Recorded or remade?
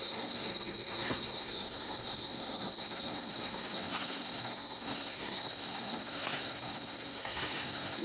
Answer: remade